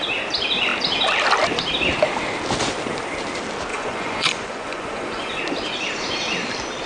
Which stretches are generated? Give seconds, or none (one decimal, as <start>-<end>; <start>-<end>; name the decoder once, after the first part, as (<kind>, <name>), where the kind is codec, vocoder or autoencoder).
3.7-5.4 (vocoder, Vocos)